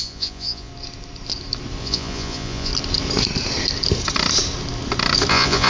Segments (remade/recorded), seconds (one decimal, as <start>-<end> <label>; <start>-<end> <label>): 0.0-0.7 remade; 0.7-1.8 recorded; 1.8-2.7 remade; 2.7-5.3 recorded; 5.3-5.7 remade